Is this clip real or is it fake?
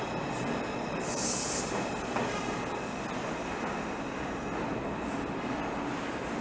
real